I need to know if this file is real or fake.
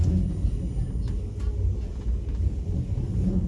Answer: real